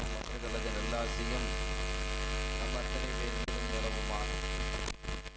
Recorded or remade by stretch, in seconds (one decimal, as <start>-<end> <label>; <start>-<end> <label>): 0.0-5.4 recorded